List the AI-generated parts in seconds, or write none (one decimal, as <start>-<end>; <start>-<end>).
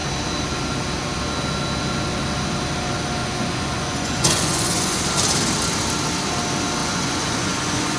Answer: 3.2-5.0; 6.8-8.0